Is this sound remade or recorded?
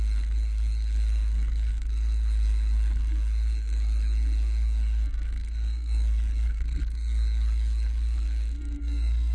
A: remade